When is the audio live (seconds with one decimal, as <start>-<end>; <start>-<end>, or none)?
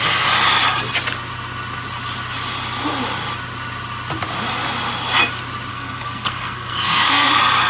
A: 0.0-5.7; 7.3-7.7